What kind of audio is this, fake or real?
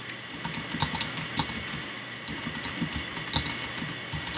real